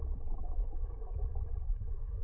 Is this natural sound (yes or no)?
no